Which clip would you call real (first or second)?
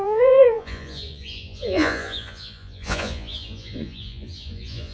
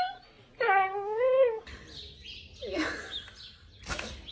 second